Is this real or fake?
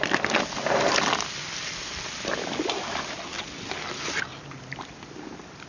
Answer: real